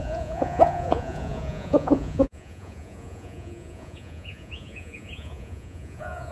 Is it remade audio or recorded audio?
remade